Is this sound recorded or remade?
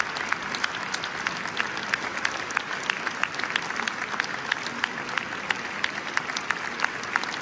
recorded